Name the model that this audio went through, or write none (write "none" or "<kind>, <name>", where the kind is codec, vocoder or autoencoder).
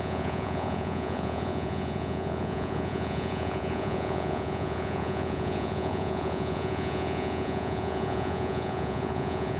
vocoder, Vocos